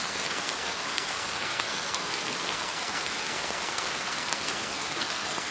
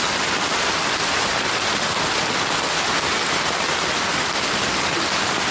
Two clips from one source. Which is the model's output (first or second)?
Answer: first